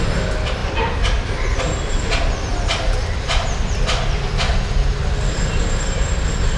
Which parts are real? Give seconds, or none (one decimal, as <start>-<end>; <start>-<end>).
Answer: 0.0-0.6; 1.6-2.5; 4.9-6.6